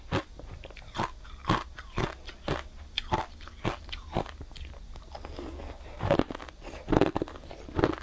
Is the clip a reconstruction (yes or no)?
no